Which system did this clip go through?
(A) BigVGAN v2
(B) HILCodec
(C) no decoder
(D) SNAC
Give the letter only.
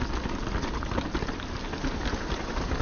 C